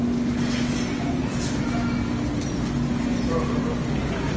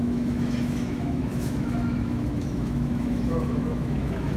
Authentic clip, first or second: first